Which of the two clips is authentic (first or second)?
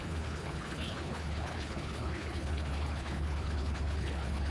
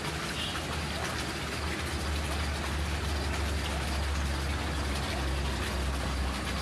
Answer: second